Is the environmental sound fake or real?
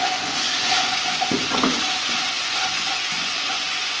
fake